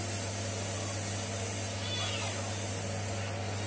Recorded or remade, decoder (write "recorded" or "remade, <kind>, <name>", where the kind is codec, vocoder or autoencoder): recorded